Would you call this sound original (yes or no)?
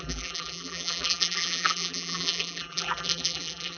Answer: no